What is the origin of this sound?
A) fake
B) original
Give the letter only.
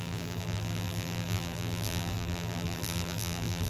A